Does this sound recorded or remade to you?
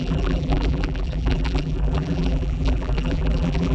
remade